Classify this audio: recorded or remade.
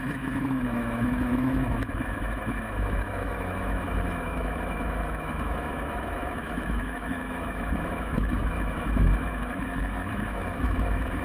remade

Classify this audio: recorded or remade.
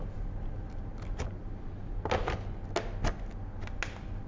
recorded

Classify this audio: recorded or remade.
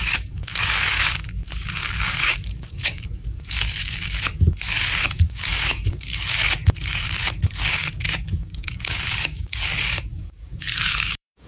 remade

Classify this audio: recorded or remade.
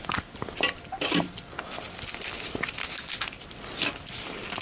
recorded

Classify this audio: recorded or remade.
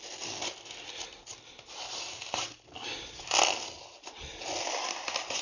recorded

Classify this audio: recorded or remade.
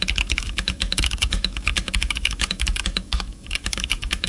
remade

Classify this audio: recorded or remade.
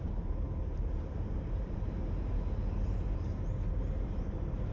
remade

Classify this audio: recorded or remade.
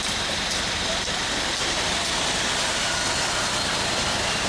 remade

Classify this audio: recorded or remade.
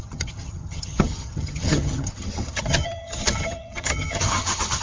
remade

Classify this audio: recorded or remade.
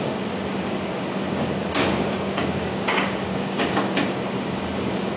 remade